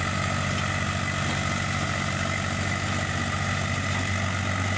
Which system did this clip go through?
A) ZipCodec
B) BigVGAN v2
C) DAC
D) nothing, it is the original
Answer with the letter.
D